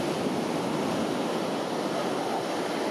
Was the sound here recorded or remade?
recorded